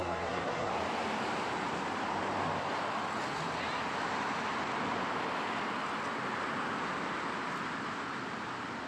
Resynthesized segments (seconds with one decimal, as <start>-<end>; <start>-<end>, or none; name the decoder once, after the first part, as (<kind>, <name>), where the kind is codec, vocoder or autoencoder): 0.0-0.7 (codec, SNAC)